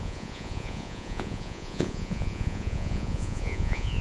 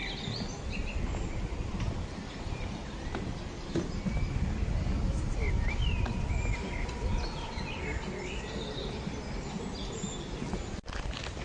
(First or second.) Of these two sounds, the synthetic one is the first